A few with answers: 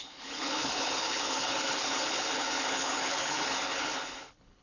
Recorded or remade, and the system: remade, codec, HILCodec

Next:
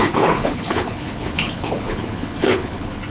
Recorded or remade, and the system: remade, codec, HILCodec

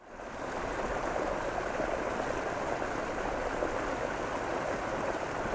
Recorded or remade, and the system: recorded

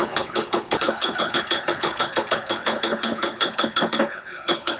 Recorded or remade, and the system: remade, codec, HILCodec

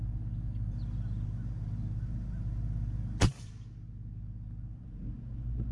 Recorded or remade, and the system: recorded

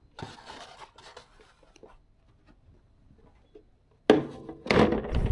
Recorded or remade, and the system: recorded